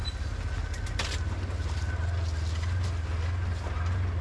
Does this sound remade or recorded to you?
recorded